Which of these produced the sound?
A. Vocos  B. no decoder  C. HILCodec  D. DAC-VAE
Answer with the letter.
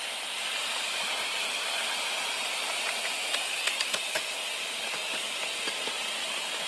B